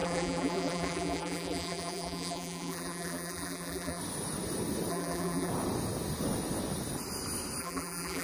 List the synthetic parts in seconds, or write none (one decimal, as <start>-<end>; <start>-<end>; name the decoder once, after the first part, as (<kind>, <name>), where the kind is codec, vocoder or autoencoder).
0.0-4.0 (vocoder, BigVGAN v2); 4.9-5.5; 7.6-8.2

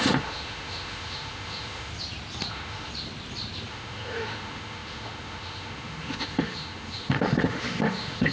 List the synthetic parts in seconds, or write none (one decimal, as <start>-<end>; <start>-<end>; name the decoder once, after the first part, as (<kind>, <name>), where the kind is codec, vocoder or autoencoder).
0.0-1.9 (autoencoder, DAC-VAE); 2.5-2.9; 3.7-8.3